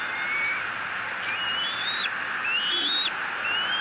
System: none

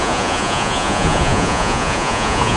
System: vocoder, Vocos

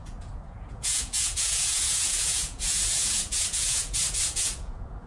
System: vocoder, Vocos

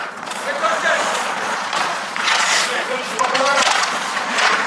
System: vocoder, Vocos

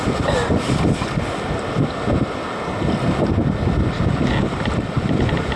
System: none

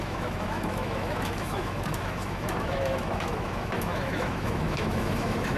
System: autoencoder, DAC-VAE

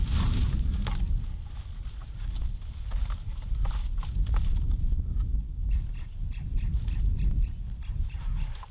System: none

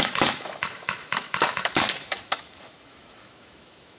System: autoencoder, DAC-VAE